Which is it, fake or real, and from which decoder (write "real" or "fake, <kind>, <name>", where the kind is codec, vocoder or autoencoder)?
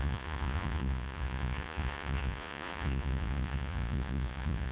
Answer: fake, vocoder, Vocos